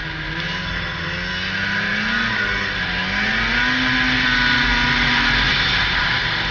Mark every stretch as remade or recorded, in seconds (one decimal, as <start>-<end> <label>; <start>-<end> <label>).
0.0-6.5 recorded

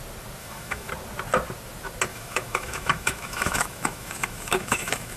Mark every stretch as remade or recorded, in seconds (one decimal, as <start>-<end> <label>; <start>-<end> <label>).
0.0-0.4 recorded; 0.4-0.9 remade; 0.9-2.1 recorded; 2.1-5.2 remade

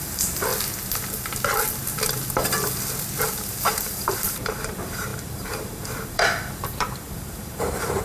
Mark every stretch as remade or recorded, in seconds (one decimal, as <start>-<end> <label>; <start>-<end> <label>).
0.0-0.5 remade; 0.5-3.5 recorded; 3.5-8.0 remade

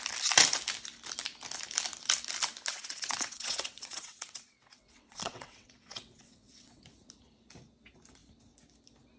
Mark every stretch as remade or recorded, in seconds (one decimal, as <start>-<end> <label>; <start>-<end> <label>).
0.0-2.7 recorded; 2.7-6.8 remade; 6.8-9.2 recorded

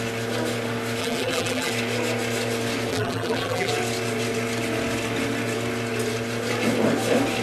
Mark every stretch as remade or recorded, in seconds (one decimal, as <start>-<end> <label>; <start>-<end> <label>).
0.0-1.0 recorded; 1.0-1.7 remade; 1.7-2.9 recorded; 2.9-3.7 remade; 3.7-7.4 recorded

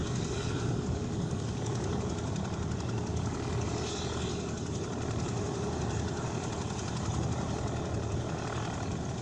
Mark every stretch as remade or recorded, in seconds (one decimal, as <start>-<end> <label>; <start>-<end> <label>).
0.0-2.0 remade; 2.0-3.1 recorded; 3.1-3.7 remade; 3.7-9.2 recorded

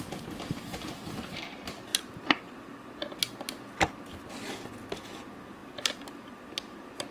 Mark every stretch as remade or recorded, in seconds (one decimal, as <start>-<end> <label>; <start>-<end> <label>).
0.0-0.7 recorded; 0.7-1.4 remade; 1.4-7.1 recorded

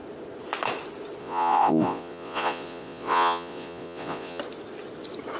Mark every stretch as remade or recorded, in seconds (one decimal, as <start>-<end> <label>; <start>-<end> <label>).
0.0-1.2 recorded; 1.2-4.4 remade; 4.4-5.4 recorded